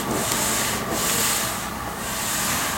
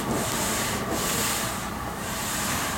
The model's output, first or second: second